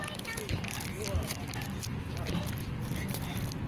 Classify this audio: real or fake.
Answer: real